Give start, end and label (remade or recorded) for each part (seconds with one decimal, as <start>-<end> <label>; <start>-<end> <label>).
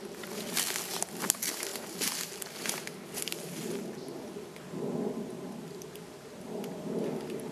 0.0-7.5 recorded